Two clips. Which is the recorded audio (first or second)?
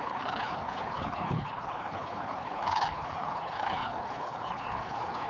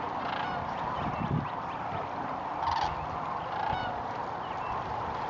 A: second